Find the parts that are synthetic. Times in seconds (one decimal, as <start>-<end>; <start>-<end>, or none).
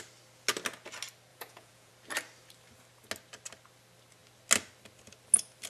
1.3-1.9